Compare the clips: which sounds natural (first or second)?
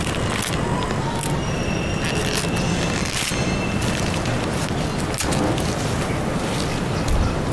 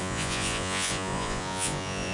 first